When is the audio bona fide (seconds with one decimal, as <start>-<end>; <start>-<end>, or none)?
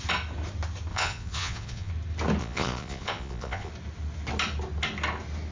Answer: 0.0-0.9; 1.9-2.4; 3.7-5.5